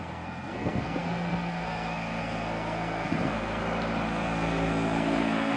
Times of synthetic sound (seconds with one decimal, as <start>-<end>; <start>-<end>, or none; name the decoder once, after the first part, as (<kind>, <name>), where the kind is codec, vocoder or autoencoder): 0.0-3.6 (codec, SNAC); 4.1-5.6